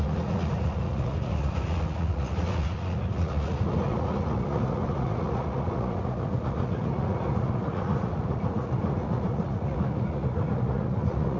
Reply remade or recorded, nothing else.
remade